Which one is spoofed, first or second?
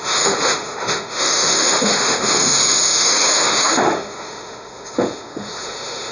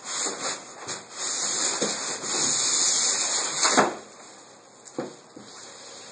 first